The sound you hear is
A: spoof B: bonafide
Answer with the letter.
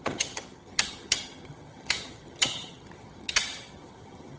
A